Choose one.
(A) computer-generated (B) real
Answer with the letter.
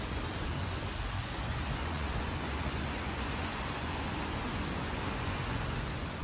A